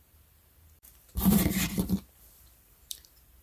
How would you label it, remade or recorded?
remade